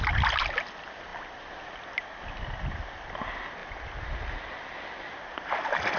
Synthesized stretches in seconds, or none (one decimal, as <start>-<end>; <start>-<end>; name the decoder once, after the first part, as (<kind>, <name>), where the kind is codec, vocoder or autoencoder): none